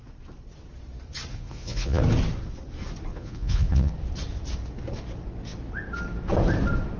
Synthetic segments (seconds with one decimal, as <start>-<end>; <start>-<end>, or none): 1.3-2.0; 3.1-3.9